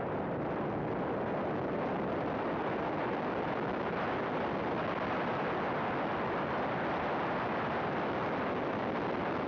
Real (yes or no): yes